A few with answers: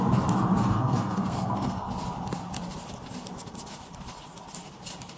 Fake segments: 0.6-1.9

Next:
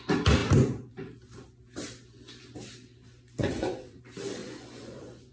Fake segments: 3.4-4.0; 4.4-5.3